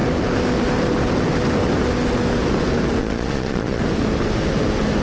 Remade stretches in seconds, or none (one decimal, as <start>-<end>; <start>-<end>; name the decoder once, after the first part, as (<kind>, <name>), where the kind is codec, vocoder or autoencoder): 3.0-3.8 (vocoder, Vocos)